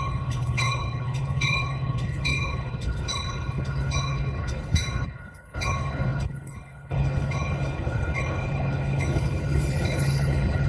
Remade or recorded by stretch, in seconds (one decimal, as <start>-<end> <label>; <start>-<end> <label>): 0.0-10.7 remade